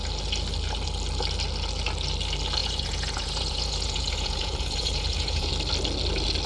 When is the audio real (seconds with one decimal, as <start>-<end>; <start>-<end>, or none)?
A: 0.0-2.6; 5.5-6.5